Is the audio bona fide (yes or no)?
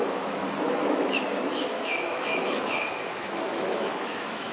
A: no